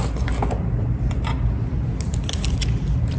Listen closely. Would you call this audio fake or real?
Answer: real